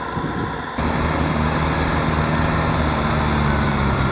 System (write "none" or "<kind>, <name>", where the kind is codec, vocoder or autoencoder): none